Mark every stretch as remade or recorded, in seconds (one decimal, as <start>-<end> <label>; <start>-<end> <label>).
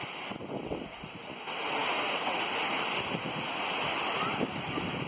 0.0-5.1 recorded